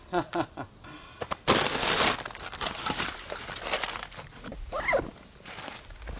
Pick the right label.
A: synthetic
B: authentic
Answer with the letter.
B